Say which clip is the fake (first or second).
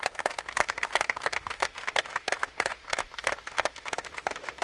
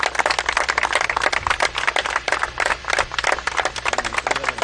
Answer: first